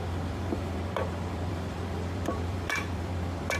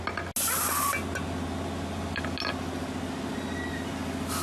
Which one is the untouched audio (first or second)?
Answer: second